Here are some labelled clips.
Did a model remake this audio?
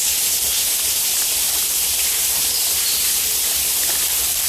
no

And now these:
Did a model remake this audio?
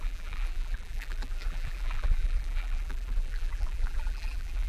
yes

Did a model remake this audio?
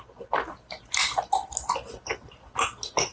no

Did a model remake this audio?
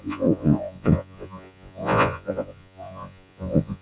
yes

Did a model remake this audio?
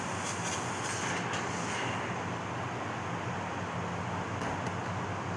no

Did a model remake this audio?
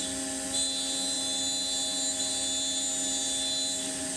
no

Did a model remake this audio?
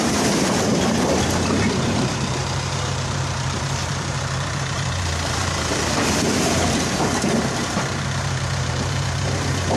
yes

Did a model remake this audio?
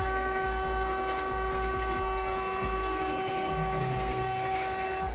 yes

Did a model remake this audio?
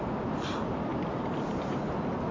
no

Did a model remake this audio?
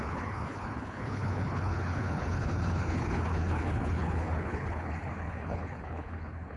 yes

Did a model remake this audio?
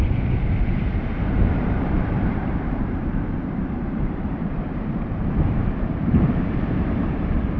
yes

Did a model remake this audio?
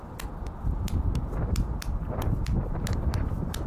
no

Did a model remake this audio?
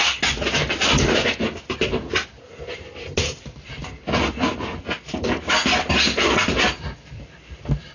no